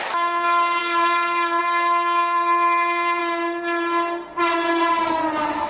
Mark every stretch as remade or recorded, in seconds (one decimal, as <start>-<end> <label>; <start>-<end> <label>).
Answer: 0.0-0.8 remade; 0.8-1.6 recorded; 1.6-3.2 remade; 3.2-5.0 recorded; 5.0-5.7 remade